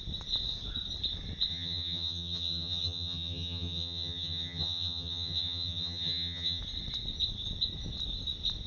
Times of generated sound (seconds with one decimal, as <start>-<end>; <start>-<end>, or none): 1.5-6.6